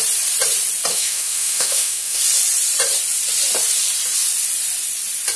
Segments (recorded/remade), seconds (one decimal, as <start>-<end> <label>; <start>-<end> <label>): 0.0-0.9 recorded; 0.9-2.2 remade; 2.2-5.4 recorded